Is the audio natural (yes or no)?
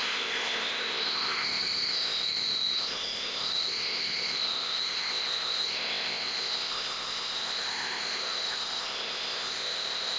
no